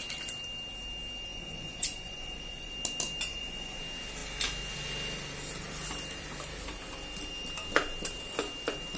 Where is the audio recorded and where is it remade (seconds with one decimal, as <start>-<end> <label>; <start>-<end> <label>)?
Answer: 0.0-1.3 recorded; 1.3-2.7 remade; 2.7-3.3 recorded; 3.3-3.8 remade; 3.8-9.0 recorded